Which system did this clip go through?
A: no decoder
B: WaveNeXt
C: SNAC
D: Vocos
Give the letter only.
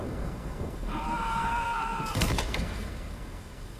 C